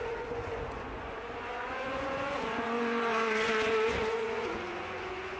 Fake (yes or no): yes